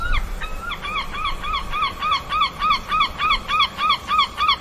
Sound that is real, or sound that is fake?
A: real